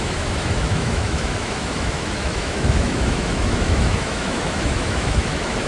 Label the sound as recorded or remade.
remade